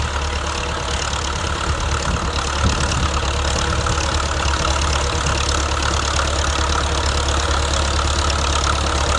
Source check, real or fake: real